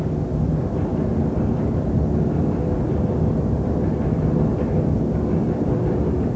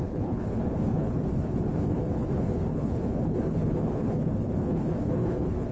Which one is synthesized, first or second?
second